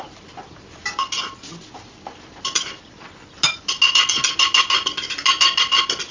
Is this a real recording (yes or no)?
yes